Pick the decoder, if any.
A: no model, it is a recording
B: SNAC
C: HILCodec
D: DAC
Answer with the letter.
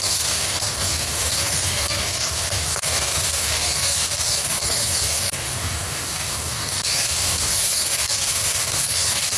D